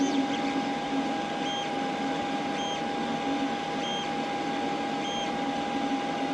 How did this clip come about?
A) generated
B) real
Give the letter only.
B